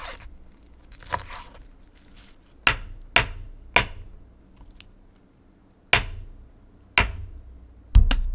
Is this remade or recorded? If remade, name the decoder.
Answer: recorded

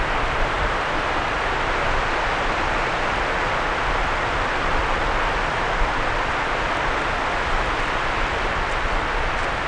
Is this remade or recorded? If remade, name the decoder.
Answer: recorded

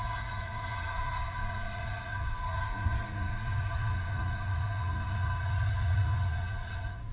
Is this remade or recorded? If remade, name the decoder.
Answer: remade, vocoder, Vocos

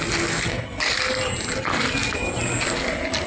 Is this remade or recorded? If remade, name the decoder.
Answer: recorded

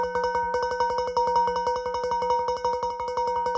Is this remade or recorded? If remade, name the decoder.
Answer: recorded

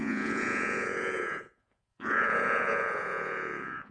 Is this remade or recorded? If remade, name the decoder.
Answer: remade, vocoder, Vocos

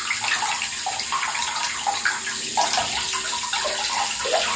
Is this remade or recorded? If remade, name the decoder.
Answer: recorded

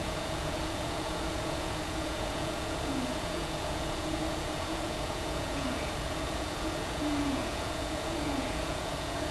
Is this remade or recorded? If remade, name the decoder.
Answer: remade, vocoder, Vocos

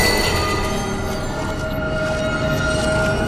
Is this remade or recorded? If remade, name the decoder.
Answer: recorded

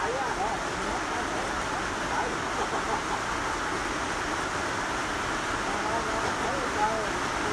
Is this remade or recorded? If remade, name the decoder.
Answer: recorded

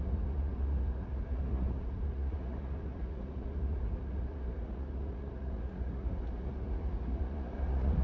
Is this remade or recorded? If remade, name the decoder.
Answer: remade, vocoder, Vocos